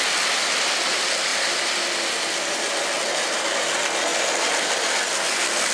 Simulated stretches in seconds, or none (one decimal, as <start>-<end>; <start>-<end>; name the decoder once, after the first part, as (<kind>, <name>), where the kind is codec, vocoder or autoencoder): none